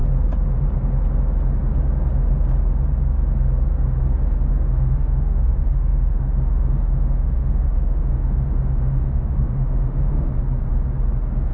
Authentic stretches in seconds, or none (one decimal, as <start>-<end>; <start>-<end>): 0.0-4.5; 10.3-11.5